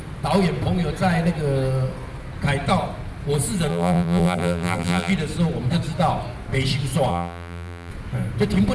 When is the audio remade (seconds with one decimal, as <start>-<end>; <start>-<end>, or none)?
3.7-5.1; 7.1-7.9